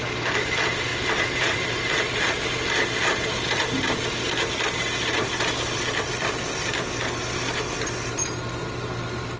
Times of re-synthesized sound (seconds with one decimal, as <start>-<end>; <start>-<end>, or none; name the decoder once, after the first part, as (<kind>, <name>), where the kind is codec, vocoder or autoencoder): none